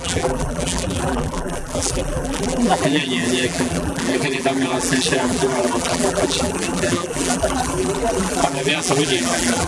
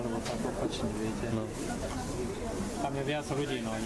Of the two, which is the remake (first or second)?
first